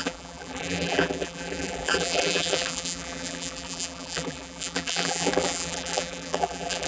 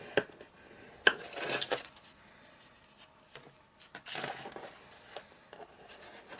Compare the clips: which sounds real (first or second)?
second